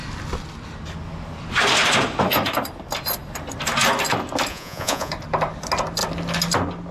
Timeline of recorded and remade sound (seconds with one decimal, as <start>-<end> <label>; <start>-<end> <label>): 0.0-4.5 recorded; 4.5-5.1 remade; 5.1-6.9 recorded

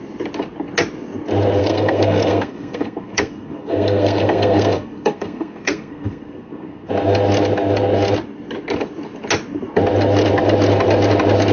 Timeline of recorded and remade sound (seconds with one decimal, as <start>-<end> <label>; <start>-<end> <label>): 0.0-1.6 recorded; 1.6-6.9 remade; 6.9-11.5 recorded

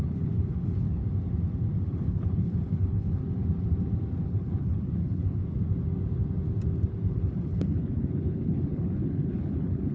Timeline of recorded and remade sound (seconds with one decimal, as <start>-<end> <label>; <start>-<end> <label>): 0.0-1.0 remade; 1.0-1.8 recorded; 1.8-3.2 remade; 3.2-4.2 recorded; 4.2-5.4 remade; 5.4-7.1 recorded; 7.1-9.9 remade

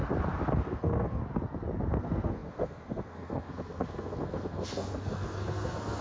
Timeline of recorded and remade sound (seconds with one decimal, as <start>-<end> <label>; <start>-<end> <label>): 0.0-0.6 recorded; 0.6-1.2 remade; 1.2-1.9 recorded; 1.9-6.0 remade

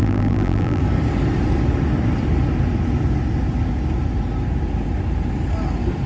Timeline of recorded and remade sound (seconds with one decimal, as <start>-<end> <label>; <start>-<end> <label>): 0.0-0.8 remade; 0.8-6.1 recorded

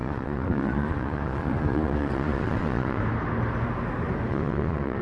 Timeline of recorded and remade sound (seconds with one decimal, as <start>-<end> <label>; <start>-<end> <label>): 0.0-3.0 remade; 3.0-4.3 recorded; 4.3-5.0 remade